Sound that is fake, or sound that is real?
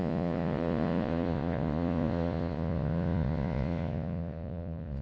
fake